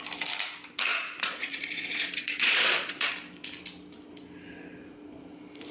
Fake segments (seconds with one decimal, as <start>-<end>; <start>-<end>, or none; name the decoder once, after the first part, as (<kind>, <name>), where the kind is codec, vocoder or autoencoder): 0.9-3.1 (vocoder, Vocos)